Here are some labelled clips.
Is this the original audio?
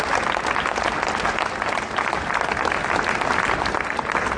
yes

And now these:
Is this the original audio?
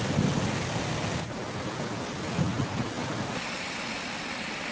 yes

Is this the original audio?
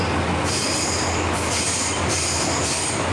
yes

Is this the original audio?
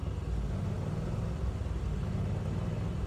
yes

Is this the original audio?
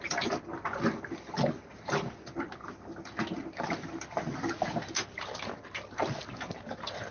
yes